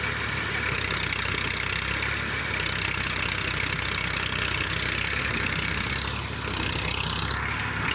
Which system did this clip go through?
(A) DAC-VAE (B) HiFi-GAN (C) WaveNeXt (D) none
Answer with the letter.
D